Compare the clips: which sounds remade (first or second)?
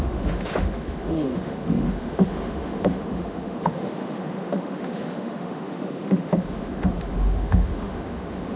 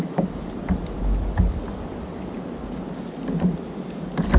first